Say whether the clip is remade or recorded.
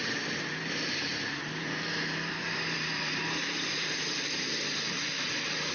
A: remade